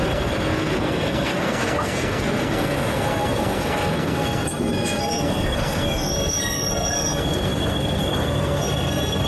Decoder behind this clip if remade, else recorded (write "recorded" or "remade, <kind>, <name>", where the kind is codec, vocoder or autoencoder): remade, codec, SNAC